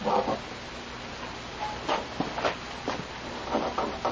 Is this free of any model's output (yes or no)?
yes